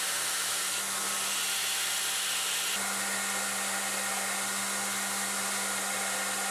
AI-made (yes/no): no